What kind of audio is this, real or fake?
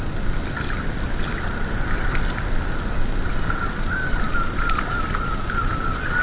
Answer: real